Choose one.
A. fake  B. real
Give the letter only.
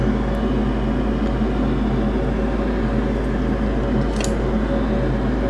B